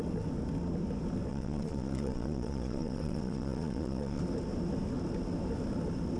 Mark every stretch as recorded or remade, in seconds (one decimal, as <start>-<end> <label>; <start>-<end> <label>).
0.0-1.3 recorded; 1.3-4.2 remade; 4.2-6.2 recorded